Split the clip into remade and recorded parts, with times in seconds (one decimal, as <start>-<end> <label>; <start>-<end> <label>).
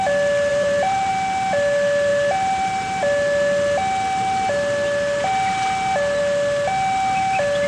0.0-0.5 recorded; 0.5-1.1 remade; 1.1-7.7 recorded